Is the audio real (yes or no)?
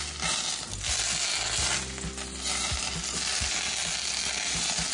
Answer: yes